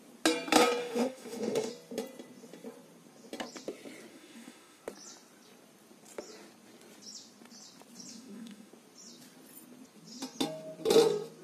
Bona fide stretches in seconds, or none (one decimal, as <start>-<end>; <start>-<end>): 0.0-0.8; 1.7-4.1; 4.8-8.1; 8.7-11.4